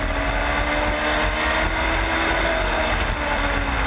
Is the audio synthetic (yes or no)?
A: no